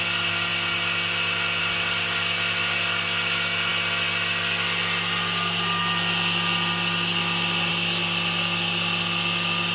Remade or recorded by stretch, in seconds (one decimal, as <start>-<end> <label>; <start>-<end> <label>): 0.0-9.7 recorded